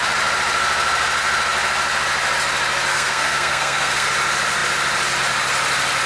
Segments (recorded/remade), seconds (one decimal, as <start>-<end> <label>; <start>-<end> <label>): 0.0-2.9 recorded; 2.9-4.1 remade; 4.1-6.1 recorded